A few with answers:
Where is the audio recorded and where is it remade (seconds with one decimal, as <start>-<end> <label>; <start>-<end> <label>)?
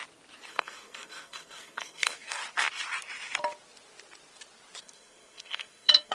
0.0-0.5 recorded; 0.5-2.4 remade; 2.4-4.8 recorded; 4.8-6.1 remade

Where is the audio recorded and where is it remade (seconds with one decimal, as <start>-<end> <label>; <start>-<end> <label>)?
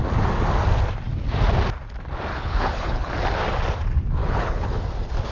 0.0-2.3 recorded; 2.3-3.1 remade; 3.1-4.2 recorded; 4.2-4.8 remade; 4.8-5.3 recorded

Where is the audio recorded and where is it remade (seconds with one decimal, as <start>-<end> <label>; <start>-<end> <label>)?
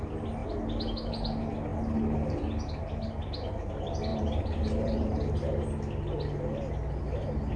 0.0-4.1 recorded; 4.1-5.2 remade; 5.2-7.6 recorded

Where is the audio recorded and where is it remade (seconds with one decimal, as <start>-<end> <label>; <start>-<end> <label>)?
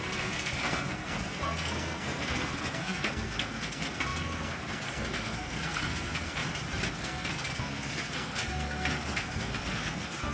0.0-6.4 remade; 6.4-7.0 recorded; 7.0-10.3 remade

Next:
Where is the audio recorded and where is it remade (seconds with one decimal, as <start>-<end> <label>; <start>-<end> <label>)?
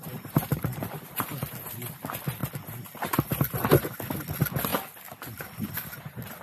0.0-1.2 remade; 1.2-6.4 recorded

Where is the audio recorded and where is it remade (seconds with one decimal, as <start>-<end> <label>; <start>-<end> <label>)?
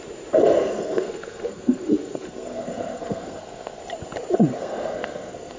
0.0-0.4 recorded; 0.4-3.8 remade; 3.8-4.5 recorded; 4.5-5.6 remade